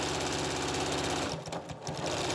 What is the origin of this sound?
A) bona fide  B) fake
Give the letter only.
A